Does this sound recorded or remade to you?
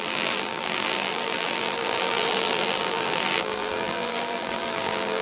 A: remade